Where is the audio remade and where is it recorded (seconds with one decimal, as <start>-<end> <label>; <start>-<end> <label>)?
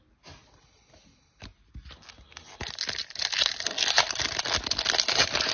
0.0-5.5 recorded